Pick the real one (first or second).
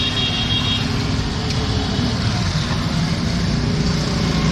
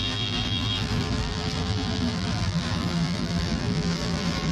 first